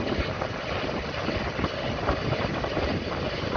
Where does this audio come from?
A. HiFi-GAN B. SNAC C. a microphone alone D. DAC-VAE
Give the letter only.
C